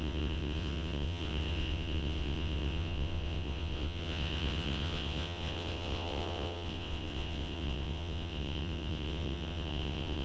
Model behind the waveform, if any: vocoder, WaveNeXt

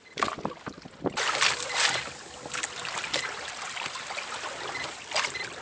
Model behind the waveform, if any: none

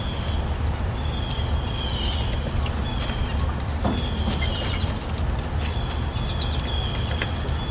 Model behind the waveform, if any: none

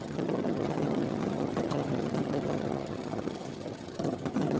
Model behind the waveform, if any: vocoder, HiFi-GAN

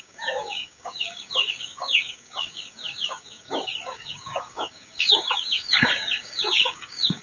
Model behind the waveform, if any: codec, DAC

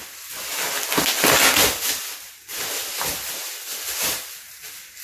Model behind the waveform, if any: none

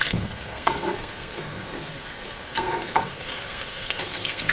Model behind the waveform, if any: codec, SNAC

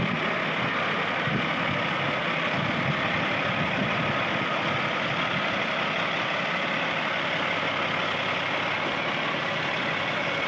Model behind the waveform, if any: none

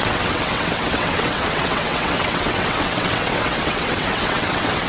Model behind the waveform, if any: vocoder, WaveNeXt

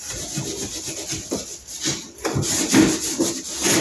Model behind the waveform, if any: none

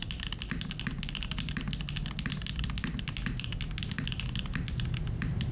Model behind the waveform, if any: none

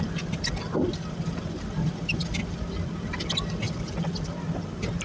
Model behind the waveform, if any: none